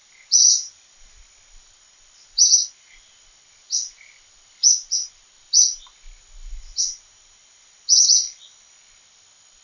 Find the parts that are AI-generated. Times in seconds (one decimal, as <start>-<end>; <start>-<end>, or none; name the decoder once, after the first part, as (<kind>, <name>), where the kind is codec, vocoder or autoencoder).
none